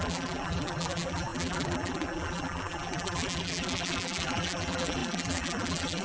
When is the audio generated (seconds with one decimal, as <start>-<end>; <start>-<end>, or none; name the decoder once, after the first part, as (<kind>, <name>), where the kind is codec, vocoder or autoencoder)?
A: 0.0-6.0 (vocoder, BigVGAN v2)